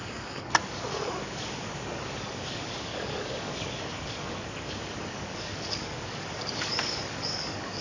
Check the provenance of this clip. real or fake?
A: fake